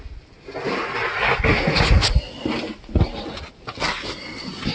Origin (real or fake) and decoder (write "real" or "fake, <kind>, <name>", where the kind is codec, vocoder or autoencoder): real